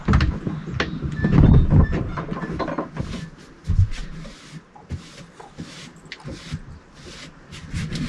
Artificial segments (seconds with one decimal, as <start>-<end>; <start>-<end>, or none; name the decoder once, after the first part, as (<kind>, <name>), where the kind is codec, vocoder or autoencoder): none